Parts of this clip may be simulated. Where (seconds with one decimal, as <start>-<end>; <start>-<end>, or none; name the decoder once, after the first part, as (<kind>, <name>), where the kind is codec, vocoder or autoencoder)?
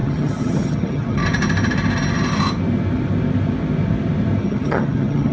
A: 0.0-1.2 (vocoder, HiFi-GAN); 4.4-5.3